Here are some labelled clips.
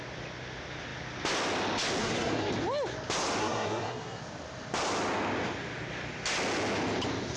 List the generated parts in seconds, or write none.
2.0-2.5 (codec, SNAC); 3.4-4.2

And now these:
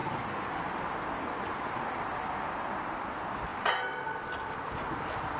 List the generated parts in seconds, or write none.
none